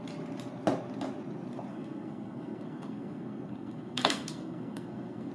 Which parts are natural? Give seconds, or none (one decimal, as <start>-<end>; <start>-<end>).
0.0-1.7